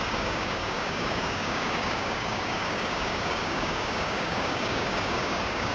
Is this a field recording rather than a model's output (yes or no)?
no